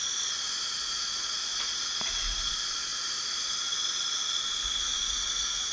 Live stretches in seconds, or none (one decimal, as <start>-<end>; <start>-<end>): 0.0-0.8; 2.4-4.5